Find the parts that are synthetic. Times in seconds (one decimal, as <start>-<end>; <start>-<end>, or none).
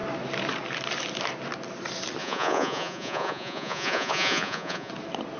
2.2-4.9